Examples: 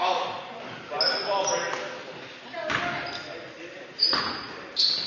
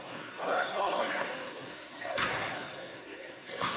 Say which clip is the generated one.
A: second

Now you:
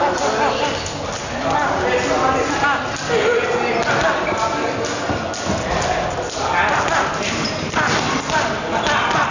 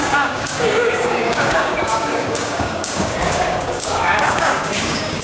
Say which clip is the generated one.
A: second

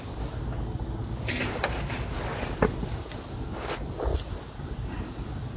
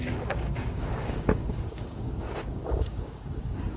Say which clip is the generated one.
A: second